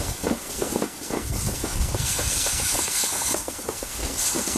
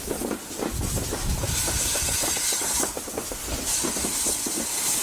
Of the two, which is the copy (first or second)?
first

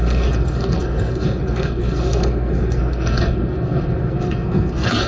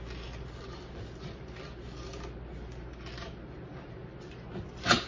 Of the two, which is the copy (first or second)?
first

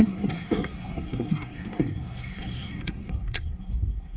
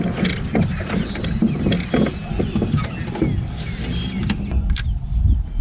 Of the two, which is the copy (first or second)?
first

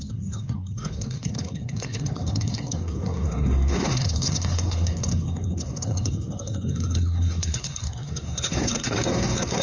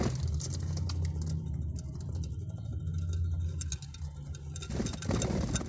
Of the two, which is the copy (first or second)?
first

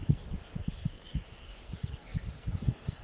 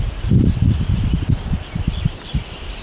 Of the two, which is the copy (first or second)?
first